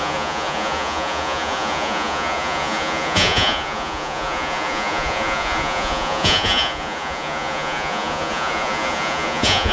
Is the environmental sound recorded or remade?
remade